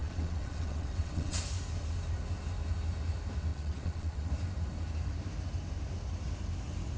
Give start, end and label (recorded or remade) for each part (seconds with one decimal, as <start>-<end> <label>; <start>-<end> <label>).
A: 0.0-1.4 remade; 1.4-3.5 recorded; 3.5-4.3 remade; 4.3-7.0 recorded